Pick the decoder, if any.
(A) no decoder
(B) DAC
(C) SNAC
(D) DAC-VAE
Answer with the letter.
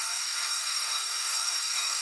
B